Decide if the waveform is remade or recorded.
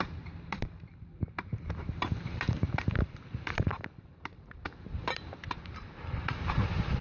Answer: remade